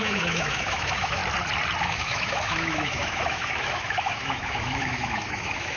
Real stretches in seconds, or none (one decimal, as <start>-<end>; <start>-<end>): 1.2-1.8